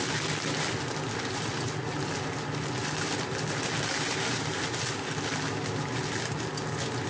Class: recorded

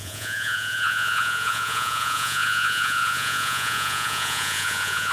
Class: remade